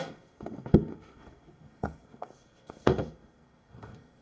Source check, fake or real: fake